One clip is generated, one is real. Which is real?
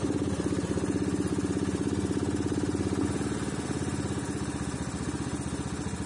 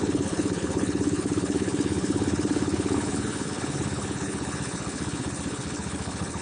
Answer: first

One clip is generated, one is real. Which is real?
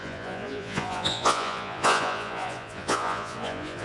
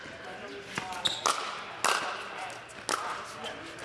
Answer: second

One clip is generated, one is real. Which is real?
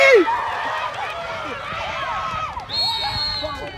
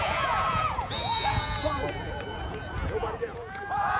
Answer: first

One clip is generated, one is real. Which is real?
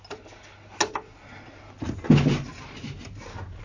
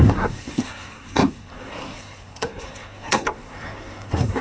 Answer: first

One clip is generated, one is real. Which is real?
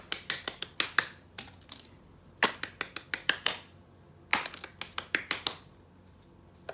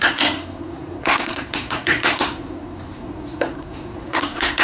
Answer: first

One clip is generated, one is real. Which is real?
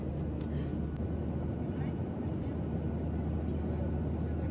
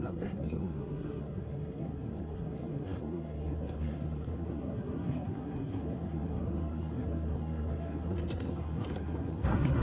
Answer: first